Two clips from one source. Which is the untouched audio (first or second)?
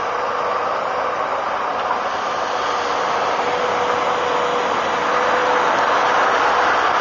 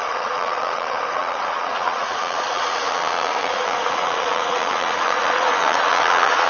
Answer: first